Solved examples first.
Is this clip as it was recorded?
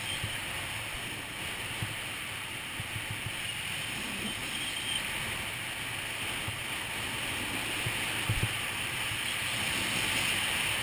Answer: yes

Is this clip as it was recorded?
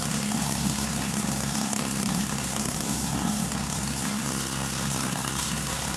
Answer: no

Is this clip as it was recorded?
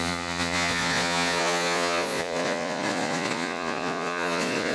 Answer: no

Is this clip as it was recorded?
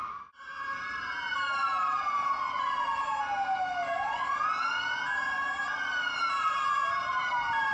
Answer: yes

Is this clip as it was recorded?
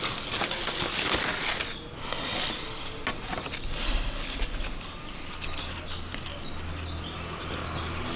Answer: yes